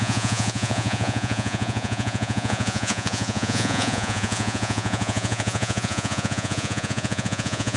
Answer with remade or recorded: remade